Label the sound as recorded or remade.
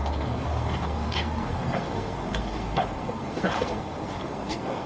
remade